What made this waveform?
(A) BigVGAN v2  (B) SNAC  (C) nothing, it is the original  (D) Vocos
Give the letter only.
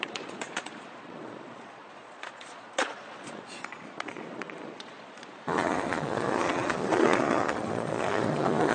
D